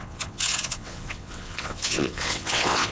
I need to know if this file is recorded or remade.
remade